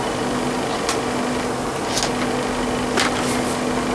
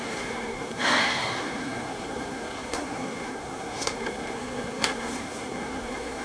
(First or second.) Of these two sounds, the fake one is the second